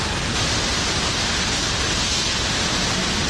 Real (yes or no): yes